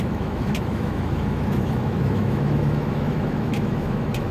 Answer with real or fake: fake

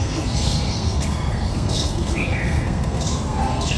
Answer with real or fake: fake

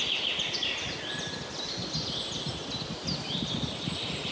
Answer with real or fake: real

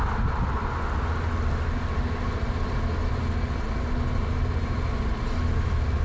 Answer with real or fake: real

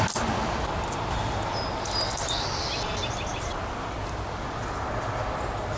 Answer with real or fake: real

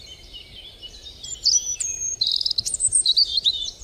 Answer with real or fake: fake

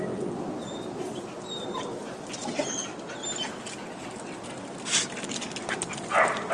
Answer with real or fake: real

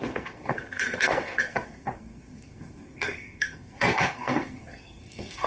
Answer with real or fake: fake